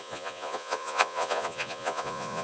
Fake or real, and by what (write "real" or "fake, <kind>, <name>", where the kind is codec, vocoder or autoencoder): fake, vocoder, Vocos